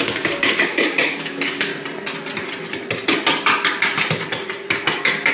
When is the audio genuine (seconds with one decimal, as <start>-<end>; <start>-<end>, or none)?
1.7-5.3